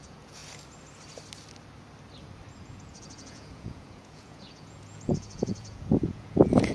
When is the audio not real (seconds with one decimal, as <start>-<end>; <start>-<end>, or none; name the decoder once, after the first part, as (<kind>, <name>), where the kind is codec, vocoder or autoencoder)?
0.0-0.4 (vocoder, Vocos); 2.6-6.7